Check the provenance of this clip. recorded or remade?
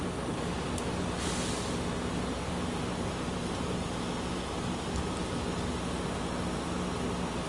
recorded